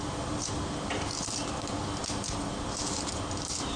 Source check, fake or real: real